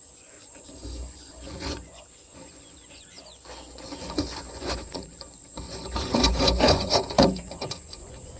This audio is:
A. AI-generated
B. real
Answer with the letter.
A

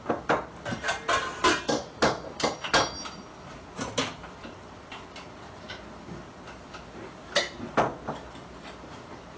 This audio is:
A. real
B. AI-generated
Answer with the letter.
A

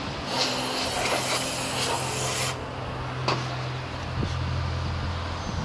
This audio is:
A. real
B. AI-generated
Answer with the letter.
A